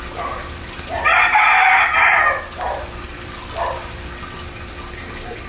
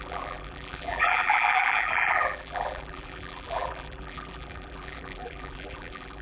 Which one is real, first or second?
first